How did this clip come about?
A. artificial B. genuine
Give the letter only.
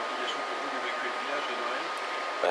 B